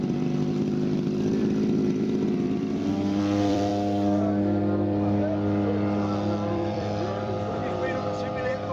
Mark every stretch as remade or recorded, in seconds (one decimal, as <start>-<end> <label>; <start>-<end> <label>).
0.0-3.7 remade; 3.7-6.5 recorded; 6.5-8.7 remade